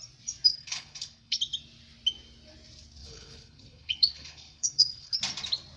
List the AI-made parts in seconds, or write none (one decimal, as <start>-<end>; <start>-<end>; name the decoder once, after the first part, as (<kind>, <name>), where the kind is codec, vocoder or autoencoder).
0.5-1.4 (codec, HILCodec); 3.0-5.1